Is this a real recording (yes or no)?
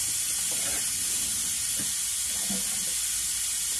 yes